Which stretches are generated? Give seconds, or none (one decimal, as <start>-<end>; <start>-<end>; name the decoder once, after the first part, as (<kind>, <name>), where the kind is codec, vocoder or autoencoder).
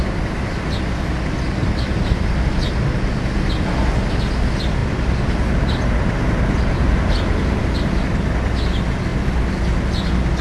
none